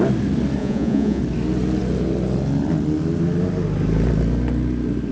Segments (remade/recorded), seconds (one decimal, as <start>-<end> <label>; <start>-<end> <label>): 0.0-0.6 recorded; 0.6-1.2 remade; 1.2-5.1 recorded